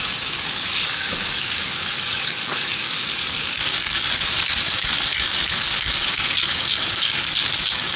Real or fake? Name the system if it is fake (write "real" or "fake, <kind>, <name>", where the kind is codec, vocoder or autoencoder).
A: fake, codec, DAC